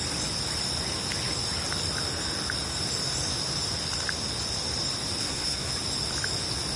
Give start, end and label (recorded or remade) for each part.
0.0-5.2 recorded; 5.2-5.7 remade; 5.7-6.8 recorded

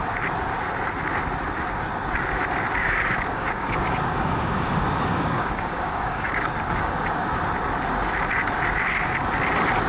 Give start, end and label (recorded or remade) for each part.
0.0-2.8 recorded; 2.8-7.5 remade; 7.5-9.9 recorded

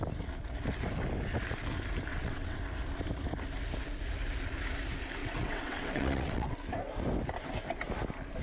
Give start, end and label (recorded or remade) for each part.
0.0-2.1 recorded; 2.1-2.6 remade; 2.6-5.2 recorded; 5.2-6.6 remade; 6.6-8.4 recorded

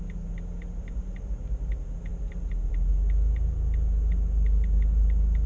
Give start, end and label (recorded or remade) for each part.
0.0-5.5 recorded